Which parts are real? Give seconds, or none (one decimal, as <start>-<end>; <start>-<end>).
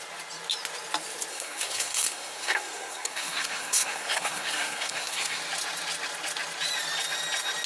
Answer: 0.0-1.3; 5.4-7.7